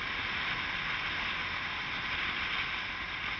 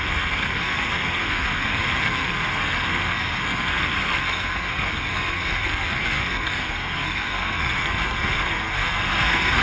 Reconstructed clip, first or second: second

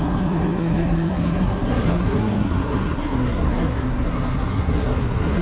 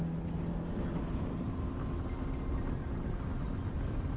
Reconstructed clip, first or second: first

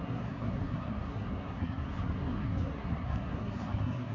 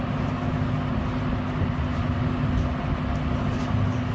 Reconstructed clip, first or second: first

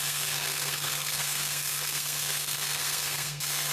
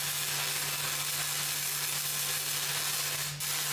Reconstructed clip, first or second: first